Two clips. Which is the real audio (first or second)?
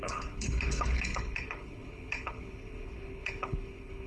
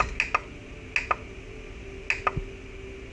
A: second